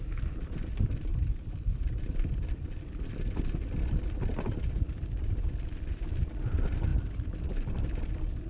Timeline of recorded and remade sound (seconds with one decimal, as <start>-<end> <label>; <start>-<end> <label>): 0.0-8.5 recorded